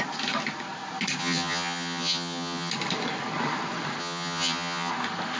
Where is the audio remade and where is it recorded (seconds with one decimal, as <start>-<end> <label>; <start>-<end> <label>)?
0.0-1.2 recorded; 1.2-2.7 remade; 2.7-4.0 recorded; 4.0-4.9 remade; 4.9-5.4 recorded